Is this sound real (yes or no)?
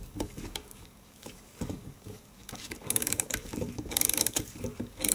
no